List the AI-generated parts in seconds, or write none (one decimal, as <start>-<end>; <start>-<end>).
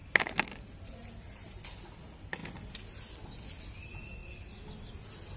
none